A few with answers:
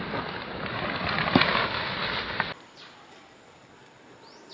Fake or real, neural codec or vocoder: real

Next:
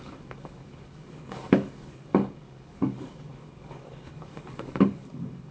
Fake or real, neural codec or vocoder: fake, codec, DAC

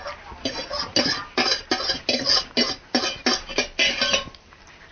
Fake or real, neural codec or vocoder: real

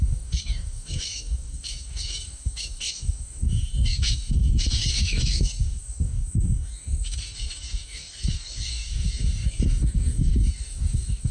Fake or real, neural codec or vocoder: fake, codec, DAC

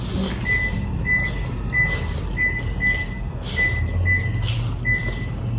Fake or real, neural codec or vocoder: real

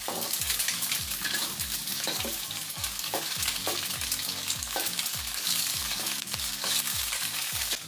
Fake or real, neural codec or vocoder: fake, codec, DAC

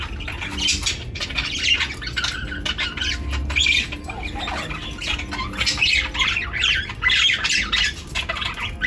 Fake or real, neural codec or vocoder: real